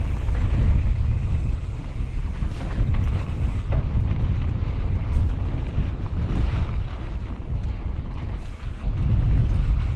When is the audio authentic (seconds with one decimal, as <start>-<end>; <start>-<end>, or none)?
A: 0.0-10.0